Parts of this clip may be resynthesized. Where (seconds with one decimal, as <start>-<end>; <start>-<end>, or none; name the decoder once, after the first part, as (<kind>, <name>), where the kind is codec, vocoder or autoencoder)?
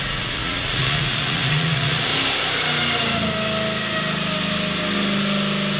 0.0-2.1 (vocoder, Vocos)